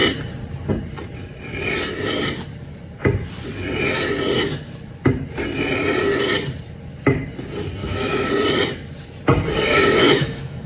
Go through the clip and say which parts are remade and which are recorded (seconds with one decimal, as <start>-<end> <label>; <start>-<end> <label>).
0.0-7.8 recorded; 7.8-8.3 remade; 8.3-9.7 recorded; 9.7-10.7 remade